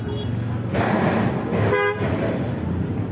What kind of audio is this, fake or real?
real